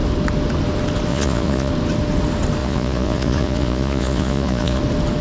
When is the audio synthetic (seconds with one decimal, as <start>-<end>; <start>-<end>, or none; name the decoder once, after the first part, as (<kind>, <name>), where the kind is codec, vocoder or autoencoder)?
1.1-1.7 (vocoder, Vocos); 2.6-4.8